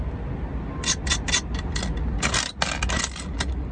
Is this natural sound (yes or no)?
yes